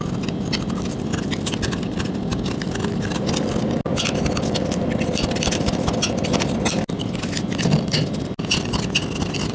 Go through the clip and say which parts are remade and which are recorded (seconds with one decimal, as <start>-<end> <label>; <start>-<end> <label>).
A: 0.0-9.5 recorded